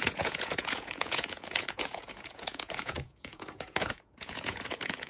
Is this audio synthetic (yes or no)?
yes